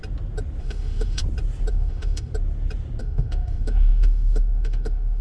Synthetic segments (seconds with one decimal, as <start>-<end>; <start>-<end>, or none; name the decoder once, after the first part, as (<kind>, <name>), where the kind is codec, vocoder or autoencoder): 0.6-1.2 (autoencoder, DAC-VAE); 1.7-2.3; 3.0-5.2